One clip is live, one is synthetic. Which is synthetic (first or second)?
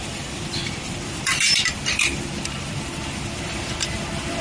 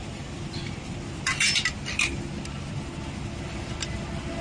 first